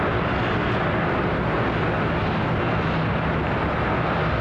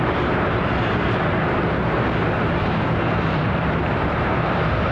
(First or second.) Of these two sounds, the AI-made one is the second